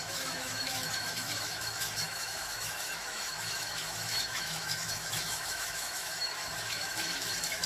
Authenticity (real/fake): fake